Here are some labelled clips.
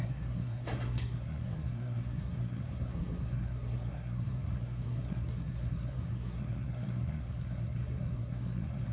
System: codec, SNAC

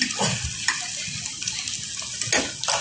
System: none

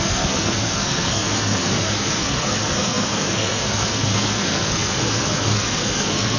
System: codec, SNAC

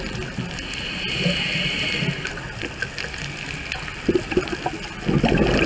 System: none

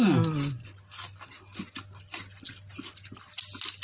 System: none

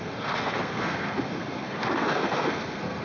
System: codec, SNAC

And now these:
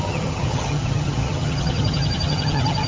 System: vocoder, HiFi-GAN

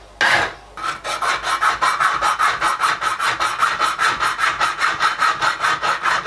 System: none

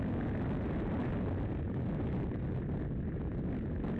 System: none